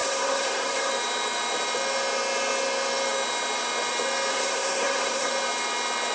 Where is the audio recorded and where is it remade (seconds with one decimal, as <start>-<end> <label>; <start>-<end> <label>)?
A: 0.0-0.9 remade; 0.9-4.3 recorded; 4.3-5.3 remade; 5.3-6.1 recorded